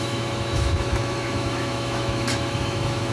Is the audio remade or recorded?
remade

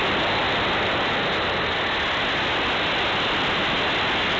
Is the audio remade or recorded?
recorded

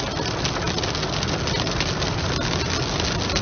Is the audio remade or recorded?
recorded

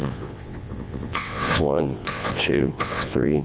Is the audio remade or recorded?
remade